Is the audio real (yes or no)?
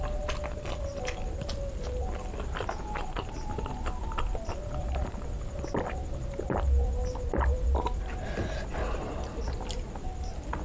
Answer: yes